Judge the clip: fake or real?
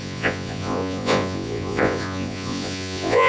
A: fake